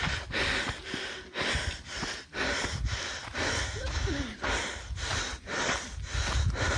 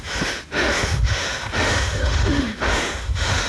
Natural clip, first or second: first